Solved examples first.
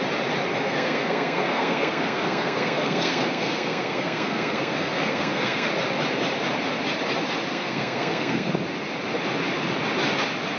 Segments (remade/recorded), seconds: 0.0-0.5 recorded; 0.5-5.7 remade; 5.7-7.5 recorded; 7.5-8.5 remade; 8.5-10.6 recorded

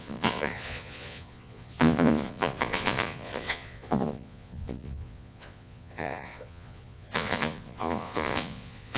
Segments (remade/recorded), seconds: 0.0-9.0 remade

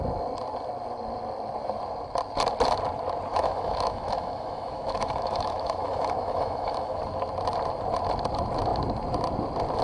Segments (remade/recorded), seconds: 0.0-3.3 recorded; 3.3-7.0 remade; 7.0-9.8 recorded

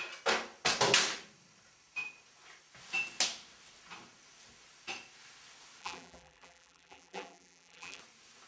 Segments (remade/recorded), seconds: 0.0-5.8 recorded; 5.8-8.0 remade; 8.0-8.5 recorded

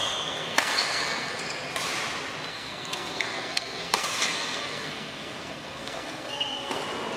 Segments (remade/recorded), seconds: 0.0-1.4 remade; 1.4-2.5 recorded; 2.5-6.8 remade; 6.8-7.2 recorded

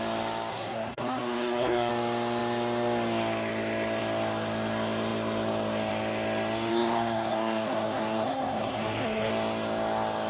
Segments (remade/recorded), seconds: 0.0-0.5 recorded; 0.5-1.9 remade; 1.9-6.7 recorded; 6.7-9.3 remade; 9.3-10.3 recorded

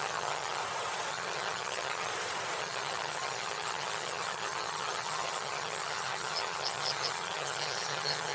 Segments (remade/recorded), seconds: 0.0-0.6 remade; 0.6-1.1 recorded; 1.1-2.1 remade; 2.1-2.6 recorded; 2.6-8.3 remade